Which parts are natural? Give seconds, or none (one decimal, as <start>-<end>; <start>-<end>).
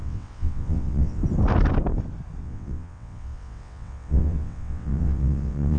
1.2-2.4